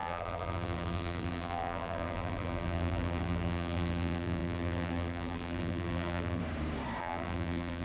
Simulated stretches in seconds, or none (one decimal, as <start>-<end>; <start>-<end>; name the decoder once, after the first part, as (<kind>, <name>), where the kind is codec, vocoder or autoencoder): 0.0-6.4 (vocoder, BigVGAN v2); 7.0-7.8